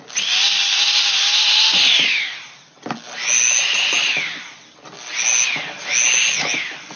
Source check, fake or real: real